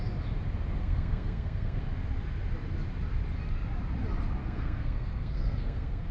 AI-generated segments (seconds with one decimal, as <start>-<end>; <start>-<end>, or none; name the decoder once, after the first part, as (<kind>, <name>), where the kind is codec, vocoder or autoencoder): 0.8-1.8 (codec, SNAC); 4.4-6.1